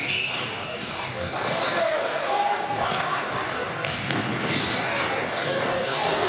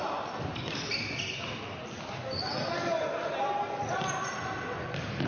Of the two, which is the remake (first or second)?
first